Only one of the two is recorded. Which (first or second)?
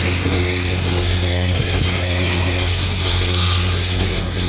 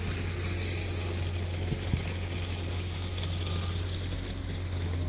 second